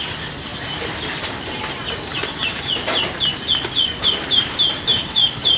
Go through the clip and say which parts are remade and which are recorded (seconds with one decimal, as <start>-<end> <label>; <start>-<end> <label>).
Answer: 0.0-0.5 recorded; 0.5-1.6 remade; 1.6-2.1 recorded; 2.1-3.2 remade; 3.2-4.0 recorded; 4.0-5.1 remade; 5.1-5.6 recorded